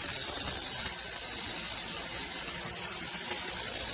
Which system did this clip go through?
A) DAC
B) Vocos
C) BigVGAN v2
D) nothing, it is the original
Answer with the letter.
D